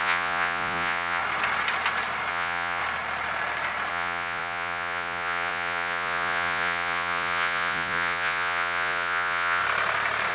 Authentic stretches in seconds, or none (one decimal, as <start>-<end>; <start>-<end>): 1.2-2.3; 2.8-3.9; 9.6-10.3